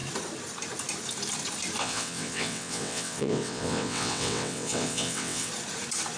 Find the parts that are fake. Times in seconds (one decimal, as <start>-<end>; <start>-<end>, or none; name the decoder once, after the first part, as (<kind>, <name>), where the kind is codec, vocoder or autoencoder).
1.8-5.5 (vocoder, WaveNeXt)